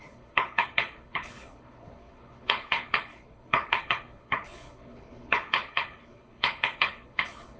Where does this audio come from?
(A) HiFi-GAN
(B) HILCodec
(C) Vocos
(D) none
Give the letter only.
B